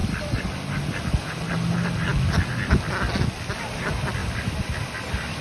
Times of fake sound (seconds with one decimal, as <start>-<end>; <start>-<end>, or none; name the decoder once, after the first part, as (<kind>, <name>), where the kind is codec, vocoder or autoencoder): none